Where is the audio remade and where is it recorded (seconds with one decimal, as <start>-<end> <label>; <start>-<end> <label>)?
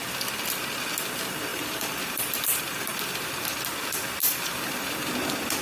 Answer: 0.0-1.5 recorded; 1.5-3.6 remade; 3.6-4.2 recorded; 4.2-5.1 remade; 5.1-5.6 recorded